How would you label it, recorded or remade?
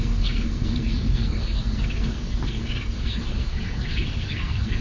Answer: remade